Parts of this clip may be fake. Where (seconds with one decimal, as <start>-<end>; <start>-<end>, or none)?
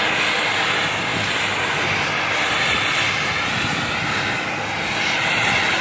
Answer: none